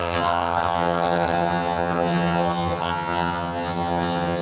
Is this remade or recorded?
remade